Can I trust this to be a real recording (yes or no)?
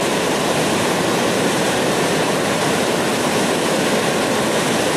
no